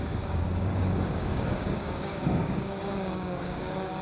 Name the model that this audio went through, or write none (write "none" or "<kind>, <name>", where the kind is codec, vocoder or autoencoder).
codec, DAC